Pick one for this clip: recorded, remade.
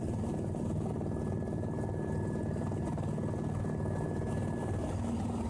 recorded